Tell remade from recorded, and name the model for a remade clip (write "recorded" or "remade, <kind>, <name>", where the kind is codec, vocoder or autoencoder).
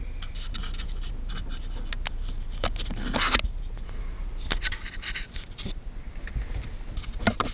recorded